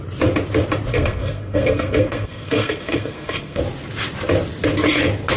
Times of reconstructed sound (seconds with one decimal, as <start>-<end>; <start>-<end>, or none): 0.9-3.6